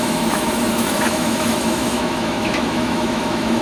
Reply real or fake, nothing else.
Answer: fake